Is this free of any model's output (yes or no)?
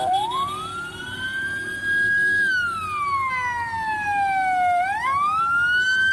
yes